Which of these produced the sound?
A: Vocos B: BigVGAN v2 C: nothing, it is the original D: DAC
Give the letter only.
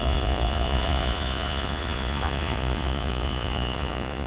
A